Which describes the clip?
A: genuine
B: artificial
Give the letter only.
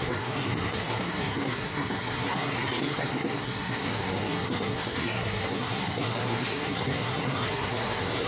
B